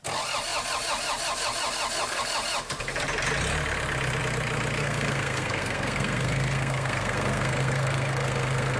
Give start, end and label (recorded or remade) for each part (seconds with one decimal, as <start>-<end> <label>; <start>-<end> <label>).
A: 0.0-4.8 recorded; 4.8-8.8 remade